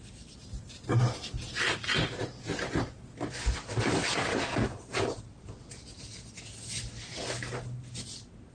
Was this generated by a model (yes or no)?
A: no